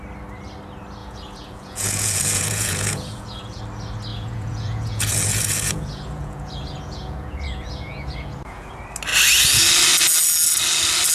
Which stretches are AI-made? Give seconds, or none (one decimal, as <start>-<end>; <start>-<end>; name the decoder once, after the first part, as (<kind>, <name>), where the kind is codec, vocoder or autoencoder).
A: 1.0-3.6 (vocoder, Vocos); 4.1-8.7